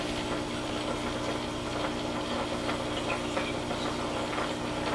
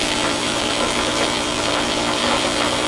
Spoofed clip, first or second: second